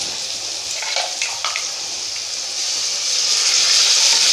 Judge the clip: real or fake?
fake